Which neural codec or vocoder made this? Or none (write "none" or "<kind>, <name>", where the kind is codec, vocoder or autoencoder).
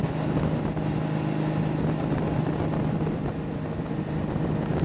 none